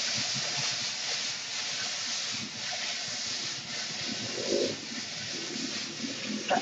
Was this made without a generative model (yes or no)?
yes